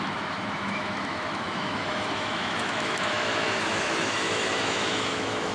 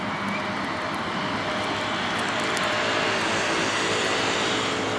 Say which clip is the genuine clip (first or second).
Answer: second